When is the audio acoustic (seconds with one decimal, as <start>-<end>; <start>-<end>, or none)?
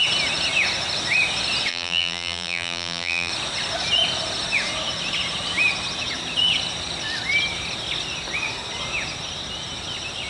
0.0-1.7; 3.3-10.3